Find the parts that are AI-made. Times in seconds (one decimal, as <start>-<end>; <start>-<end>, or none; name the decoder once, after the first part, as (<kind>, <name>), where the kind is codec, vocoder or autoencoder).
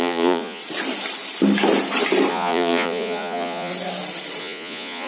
0.0-0.6 (vocoder, Vocos); 2.3-3.7; 4.4-5.1